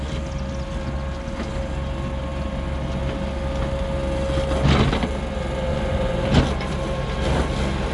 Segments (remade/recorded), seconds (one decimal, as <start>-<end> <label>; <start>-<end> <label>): 0.0-5.7 recorded; 5.7-6.4 remade; 6.4-7.9 recorded